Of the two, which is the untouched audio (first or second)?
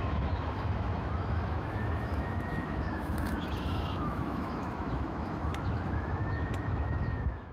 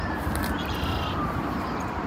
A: second